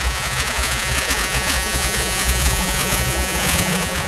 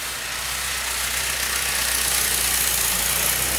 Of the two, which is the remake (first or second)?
first